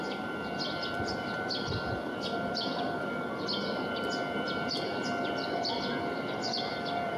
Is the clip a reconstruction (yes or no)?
yes